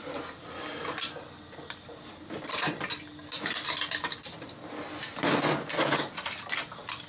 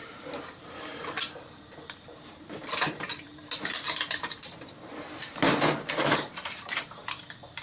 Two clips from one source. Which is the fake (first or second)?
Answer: second